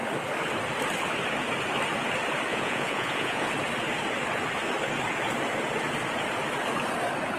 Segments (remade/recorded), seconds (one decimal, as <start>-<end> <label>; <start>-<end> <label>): 0.0-2.5 recorded; 2.5-3.5 remade; 3.5-7.4 recorded